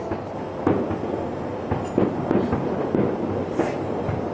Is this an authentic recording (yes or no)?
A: yes